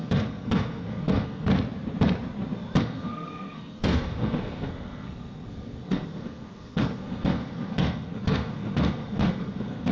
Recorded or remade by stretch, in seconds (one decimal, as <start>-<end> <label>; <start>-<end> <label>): 0.0-1.5 remade; 1.5-2.8 recorded; 2.8-9.9 remade